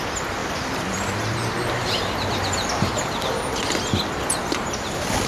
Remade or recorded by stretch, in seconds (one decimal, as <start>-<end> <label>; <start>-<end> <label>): 0.0-0.4 recorded; 0.4-3.3 remade; 3.3-4.4 recorded; 4.4-5.3 remade